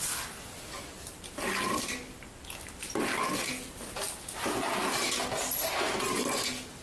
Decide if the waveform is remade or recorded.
recorded